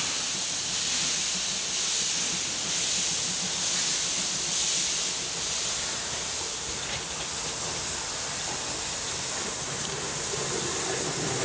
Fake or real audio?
real